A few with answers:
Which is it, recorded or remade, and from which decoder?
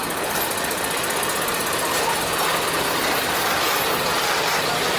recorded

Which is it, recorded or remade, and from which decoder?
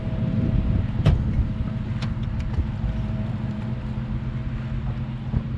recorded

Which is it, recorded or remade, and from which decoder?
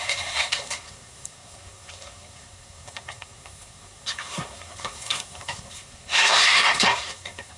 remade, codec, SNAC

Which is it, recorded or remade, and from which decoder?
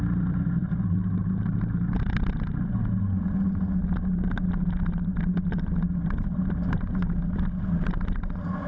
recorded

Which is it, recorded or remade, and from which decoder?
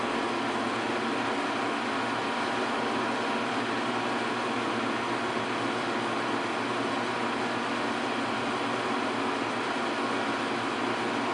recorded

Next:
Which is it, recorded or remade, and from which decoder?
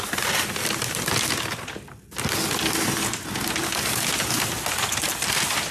recorded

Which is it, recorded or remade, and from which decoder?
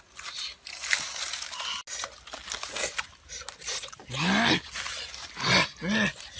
recorded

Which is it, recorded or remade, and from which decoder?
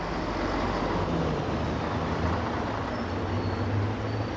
recorded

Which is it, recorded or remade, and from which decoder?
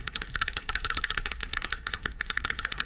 remade, codec, SNAC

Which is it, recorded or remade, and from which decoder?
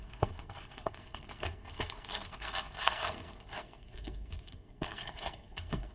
remade, codec, SNAC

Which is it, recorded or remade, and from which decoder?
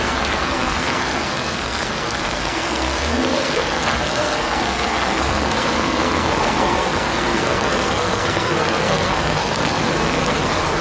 remade, codec, SNAC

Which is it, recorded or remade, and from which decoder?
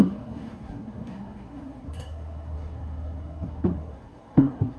remade, codec, SNAC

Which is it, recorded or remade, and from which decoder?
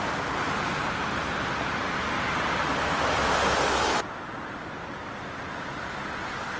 recorded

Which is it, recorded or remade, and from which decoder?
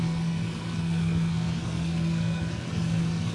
remade, codec, SNAC